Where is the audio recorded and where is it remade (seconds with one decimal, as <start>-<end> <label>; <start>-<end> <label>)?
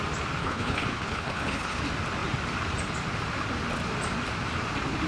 0.0-0.4 recorded; 0.4-1.8 remade; 1.8-5.1 recorded